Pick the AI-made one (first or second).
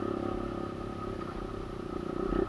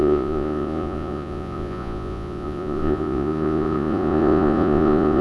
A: second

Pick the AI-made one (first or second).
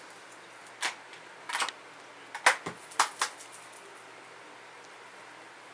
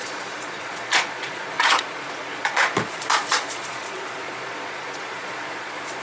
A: second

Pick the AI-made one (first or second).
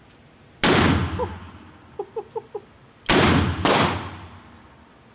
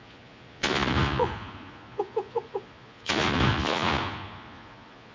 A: second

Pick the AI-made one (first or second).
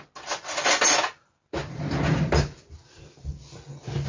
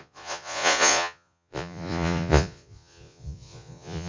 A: second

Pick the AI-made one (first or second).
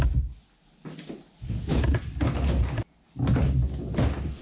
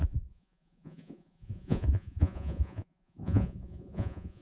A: second